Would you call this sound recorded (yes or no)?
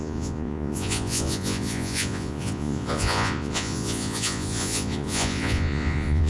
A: no